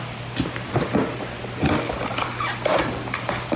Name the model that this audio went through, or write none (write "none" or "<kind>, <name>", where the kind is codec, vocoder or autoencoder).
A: none